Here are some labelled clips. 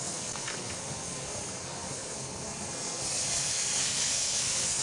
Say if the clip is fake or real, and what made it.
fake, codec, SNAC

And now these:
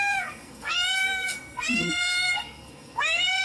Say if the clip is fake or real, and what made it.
fake, codec, SNAC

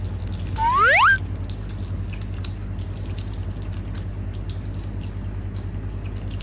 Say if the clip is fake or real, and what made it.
real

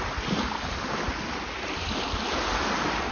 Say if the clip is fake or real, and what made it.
real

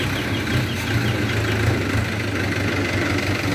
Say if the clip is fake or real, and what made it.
real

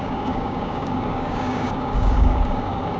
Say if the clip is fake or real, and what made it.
fake, codec, DAC